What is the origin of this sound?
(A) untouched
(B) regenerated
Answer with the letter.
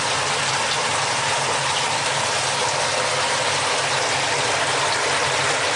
A